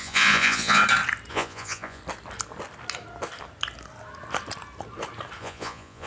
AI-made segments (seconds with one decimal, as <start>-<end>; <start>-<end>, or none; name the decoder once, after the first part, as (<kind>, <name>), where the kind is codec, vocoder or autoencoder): 0.0-0.8 (vocoder, Vocos); 1.3-2.0; 5.4-6.1